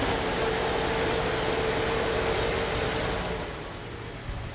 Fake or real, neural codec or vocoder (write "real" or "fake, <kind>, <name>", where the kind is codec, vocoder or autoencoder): real